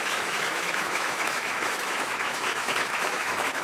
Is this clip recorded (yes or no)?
no